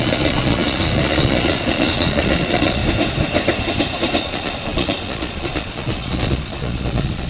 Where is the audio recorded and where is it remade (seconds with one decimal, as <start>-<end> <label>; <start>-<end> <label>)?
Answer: 0.0-2.8 remade; 2.8-4.2 recorded; 4.2-7.3 remade